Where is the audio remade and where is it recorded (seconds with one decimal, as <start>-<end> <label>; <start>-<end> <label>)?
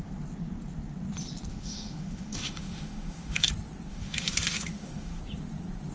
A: 0.0-1.5 recorded; 1.5-3.5 remade; 3.5-3.9 recorded; 3.9-5.2 remade; 5.2-5.9 recorded